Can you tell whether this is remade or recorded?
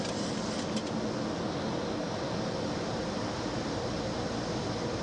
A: recorded